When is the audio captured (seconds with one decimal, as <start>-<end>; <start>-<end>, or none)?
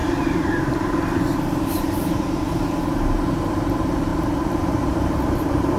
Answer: none